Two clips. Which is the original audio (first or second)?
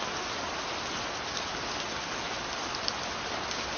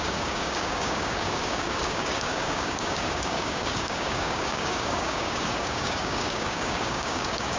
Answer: first